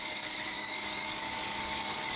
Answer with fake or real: fake